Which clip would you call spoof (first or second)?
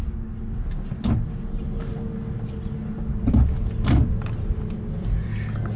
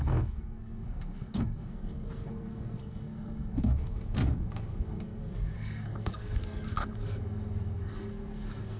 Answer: second